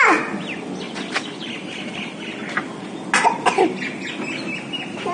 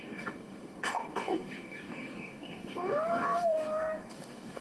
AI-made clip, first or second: second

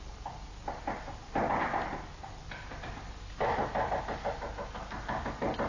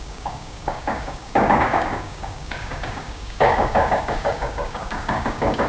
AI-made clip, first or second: second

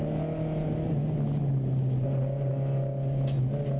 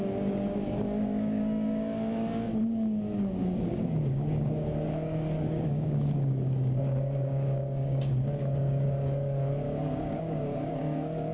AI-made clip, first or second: second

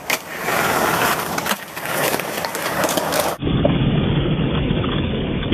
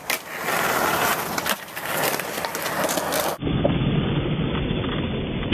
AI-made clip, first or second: first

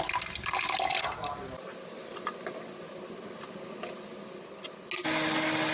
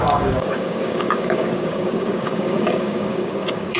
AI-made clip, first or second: second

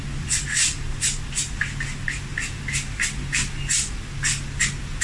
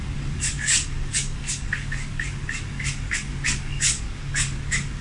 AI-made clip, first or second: second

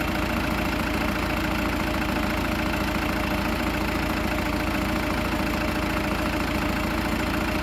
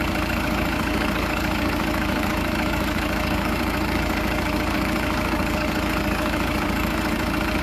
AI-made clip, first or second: second